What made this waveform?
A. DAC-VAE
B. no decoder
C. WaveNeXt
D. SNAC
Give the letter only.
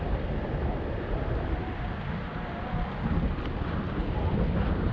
B